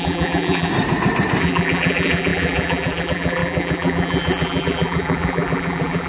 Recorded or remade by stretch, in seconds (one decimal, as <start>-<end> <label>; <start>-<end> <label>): 0.0-0.7 remade; 0.7-1.4 recorded; 1.4-6.1 remade